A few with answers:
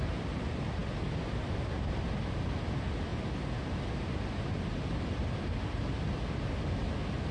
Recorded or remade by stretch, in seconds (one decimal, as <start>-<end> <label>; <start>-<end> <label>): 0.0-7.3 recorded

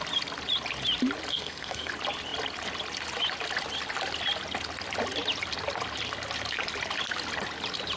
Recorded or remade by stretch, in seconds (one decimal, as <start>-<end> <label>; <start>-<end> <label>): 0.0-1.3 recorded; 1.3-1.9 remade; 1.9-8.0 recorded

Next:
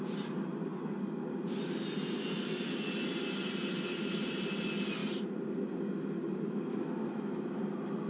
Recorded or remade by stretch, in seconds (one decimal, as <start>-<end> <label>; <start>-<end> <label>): 0.0-8.1 recorded

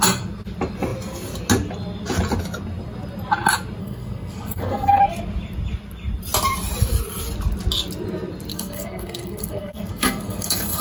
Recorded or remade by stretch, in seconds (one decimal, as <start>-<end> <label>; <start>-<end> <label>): 0.0-3.8 recorded; 3.8-5.0 remade; 5.0-8.5 recorded; 8.5-10.8 remade

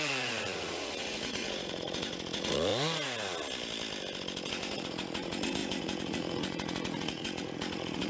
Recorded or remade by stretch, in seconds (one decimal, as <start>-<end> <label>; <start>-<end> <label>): 0.0-2.7 remade; 2.7-4.5 recorded; 4.5-8.1 remade